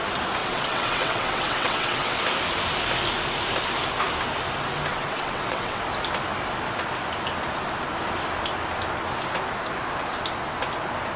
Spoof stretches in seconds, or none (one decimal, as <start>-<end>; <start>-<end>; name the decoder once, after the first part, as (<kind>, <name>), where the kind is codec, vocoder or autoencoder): 0.4-2.2 (vocoder, WaveNeXt); 4.9-5.8